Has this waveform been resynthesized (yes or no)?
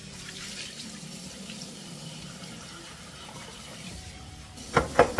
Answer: yes